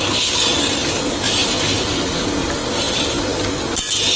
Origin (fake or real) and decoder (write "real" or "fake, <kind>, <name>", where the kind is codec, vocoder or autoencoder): real